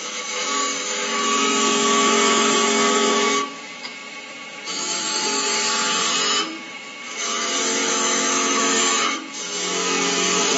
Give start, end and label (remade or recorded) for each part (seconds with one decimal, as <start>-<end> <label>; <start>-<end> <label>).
0.0-10.6 remade